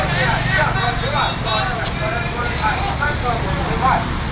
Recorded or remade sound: recorded